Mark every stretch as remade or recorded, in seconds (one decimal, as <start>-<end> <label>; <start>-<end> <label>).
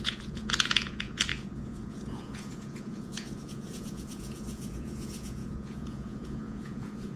0.0-7.2 remade